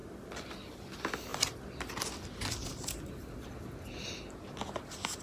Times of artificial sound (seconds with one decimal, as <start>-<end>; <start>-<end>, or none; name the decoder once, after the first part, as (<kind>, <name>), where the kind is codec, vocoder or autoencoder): none